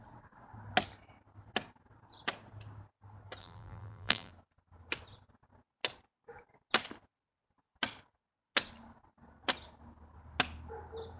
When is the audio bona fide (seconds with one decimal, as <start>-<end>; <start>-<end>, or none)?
0.0-3.4; 4.3-11.2